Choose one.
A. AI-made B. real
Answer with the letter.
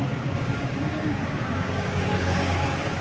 A